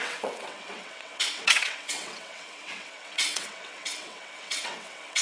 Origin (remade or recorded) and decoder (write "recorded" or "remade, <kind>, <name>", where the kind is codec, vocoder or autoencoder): remade, vocoder, WaveNeXt